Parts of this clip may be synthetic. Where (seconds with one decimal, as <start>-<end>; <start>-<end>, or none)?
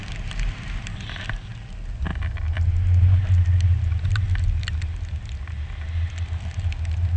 none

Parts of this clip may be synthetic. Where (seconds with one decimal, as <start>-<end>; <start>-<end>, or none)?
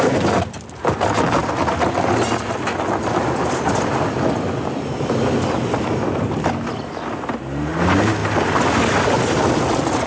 8.2-8.8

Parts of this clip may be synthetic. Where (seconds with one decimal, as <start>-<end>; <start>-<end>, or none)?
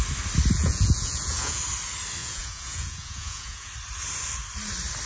0.6-1.6; 2.2-3.7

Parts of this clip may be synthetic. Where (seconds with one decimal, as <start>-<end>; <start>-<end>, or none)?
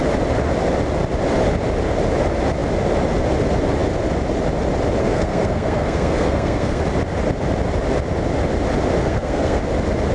5.0-6.8; 9.0-9.6